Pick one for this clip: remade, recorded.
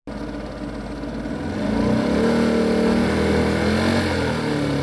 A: recorded